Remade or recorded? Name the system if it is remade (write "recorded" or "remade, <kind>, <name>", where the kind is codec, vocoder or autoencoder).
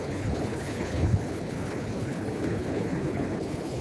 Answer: remade, codec, HILCodec